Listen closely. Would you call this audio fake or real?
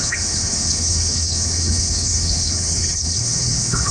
fake